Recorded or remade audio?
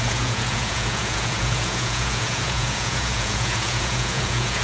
remade